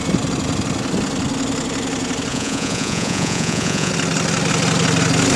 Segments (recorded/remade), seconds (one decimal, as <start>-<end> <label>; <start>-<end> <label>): 0.0-2.3 recorded; 2.3-3.9 remade; 3.9-5.4 recorded